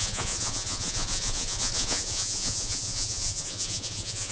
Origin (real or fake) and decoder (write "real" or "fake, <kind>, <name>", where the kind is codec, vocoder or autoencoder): fake, vocoder, Vocos